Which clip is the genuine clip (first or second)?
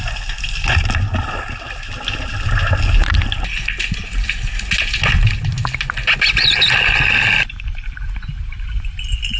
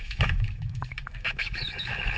first